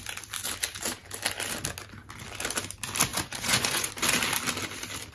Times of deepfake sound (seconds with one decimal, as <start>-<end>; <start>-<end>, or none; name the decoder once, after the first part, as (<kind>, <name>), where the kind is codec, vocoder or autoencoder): 3.1-3.9 (vocoder, Vocos)